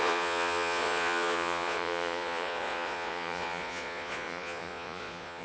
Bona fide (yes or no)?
no